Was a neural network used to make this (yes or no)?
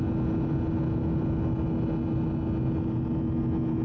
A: no